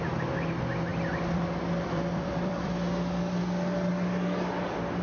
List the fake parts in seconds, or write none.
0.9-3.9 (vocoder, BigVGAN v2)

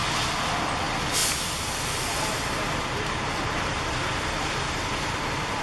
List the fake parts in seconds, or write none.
0.6-5.6 (vocoder, BigVGAN v2)